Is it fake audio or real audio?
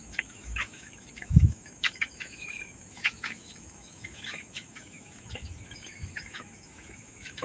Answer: fake